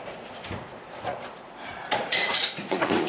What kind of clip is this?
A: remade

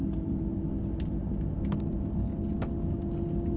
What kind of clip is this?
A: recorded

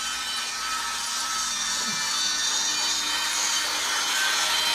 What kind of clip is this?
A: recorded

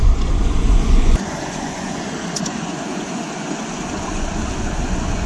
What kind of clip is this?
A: remade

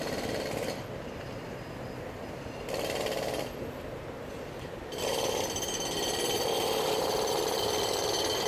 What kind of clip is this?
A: recorded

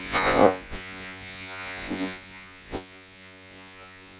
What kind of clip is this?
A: remade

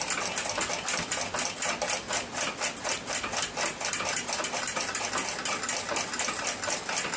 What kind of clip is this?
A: recorded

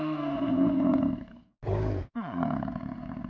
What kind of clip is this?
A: recorded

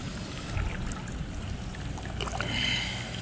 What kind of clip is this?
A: recorded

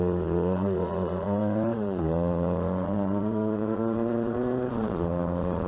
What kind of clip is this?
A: remade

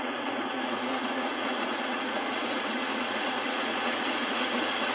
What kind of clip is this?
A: remade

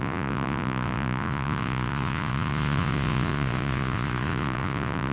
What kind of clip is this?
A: remade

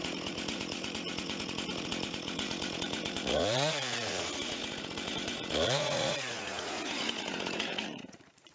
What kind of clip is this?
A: remade